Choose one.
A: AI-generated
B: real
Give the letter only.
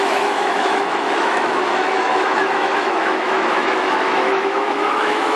A